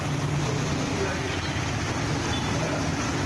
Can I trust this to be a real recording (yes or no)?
yes